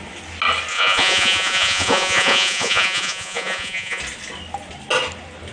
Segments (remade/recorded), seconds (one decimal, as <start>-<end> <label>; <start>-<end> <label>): 0.0-0.7 recorded; 0.7-4.0 remade; 4.0-5.5 recorded